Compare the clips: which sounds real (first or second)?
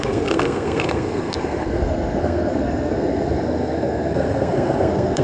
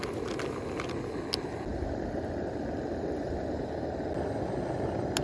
second